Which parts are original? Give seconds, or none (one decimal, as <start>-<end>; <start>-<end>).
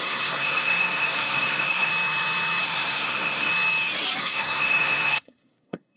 1.9-2.6; 3.5-4.2